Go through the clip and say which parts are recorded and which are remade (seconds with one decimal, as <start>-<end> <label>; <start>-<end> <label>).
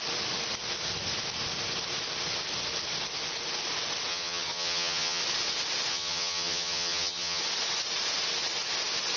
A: 0.0-4.1 recorded; 4.1-5.2 remade; 5.2-5.9 recorded; 5.9-7.4 remade; 7.4-9.2 recorded